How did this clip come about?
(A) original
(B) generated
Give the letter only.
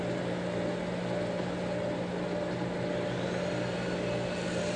A